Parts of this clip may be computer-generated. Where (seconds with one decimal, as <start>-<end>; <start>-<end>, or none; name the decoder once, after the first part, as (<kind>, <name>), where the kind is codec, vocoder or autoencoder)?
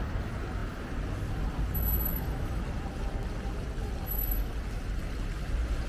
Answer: 2.1-2.6 (autoencoder, DAC-VAE)